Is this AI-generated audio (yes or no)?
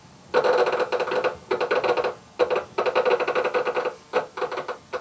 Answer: no